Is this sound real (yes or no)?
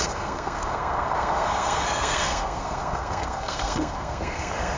no